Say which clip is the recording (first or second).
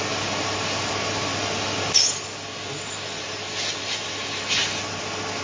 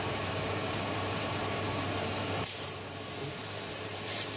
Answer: first